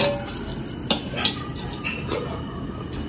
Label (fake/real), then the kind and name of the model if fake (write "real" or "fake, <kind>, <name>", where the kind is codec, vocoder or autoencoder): real